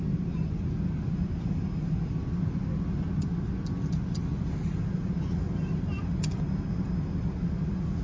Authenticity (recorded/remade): recorded